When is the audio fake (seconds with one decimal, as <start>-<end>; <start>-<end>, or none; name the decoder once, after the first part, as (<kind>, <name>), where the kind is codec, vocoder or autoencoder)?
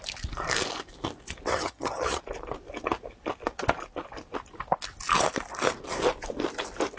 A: 1.5-2.2 (vocoder, HiFi-GAN)